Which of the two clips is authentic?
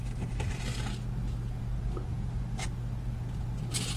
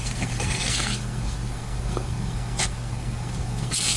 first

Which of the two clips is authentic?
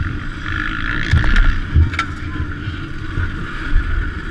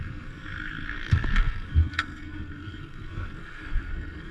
first